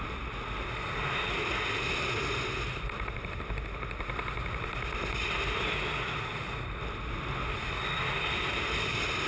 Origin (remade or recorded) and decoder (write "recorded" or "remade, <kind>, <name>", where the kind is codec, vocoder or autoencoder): recorded